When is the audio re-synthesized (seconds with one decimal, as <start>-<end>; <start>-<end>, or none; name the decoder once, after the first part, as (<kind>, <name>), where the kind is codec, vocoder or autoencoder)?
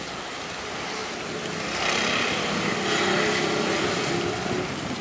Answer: none